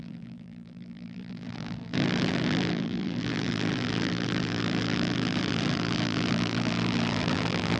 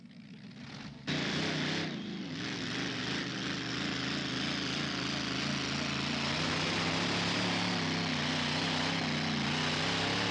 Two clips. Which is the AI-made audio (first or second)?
first